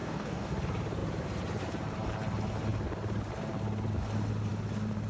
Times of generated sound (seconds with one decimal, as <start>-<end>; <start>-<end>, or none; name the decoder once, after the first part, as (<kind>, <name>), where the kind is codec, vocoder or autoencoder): 0.0-0.5 (codec, DAC)